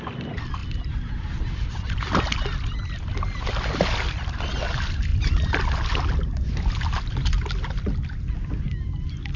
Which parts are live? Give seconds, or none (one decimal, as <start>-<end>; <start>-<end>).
0.0-9.4